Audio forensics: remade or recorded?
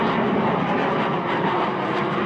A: recorded